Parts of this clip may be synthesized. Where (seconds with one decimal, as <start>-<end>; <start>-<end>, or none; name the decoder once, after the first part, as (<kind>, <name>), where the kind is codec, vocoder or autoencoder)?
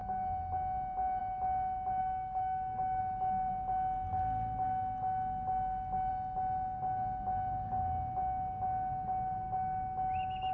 2.0-3.0 (codec, DAC)